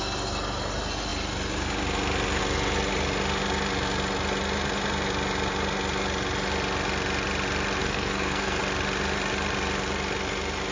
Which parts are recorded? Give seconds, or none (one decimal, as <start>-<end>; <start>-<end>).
0.0-7.8; 8.6-10.7